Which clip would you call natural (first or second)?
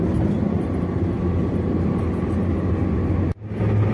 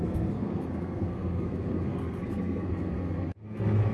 first